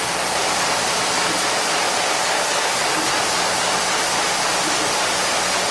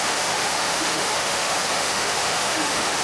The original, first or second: first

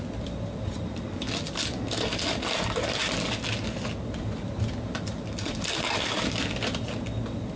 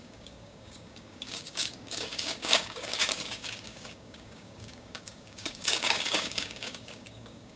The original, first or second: first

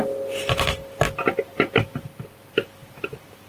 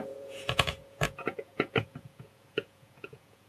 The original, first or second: first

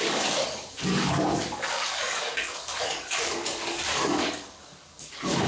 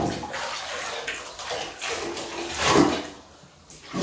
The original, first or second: second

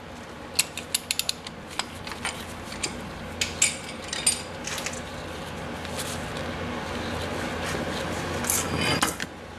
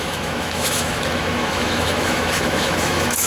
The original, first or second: first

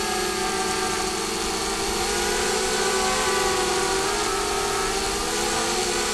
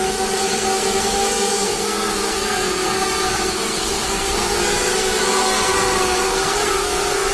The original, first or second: first